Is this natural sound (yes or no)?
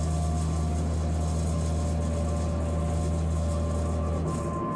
yes